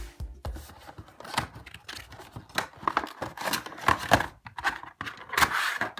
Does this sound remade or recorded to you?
recorded